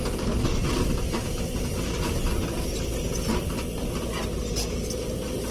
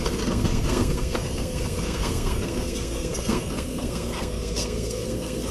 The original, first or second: first